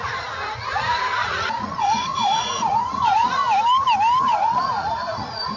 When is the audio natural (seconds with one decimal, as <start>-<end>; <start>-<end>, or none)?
3.4-4.2

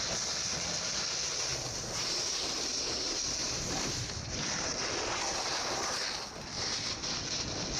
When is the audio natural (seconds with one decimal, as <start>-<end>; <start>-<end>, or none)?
0.0-1.5; 2.6-7.8

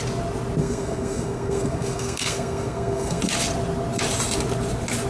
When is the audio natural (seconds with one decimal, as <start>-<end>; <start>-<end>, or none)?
0.0-0.6; 3.2-5.1

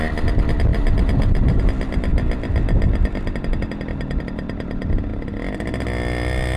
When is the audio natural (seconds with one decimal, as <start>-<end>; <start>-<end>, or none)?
0.0-0.7; 1.6-6.6

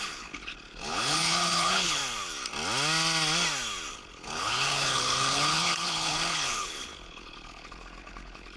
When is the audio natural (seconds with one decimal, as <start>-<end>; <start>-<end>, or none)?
2.0-3.9

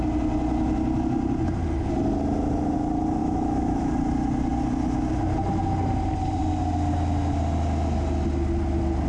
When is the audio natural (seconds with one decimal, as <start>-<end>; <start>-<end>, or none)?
0.0-3.2; 3.9-9.1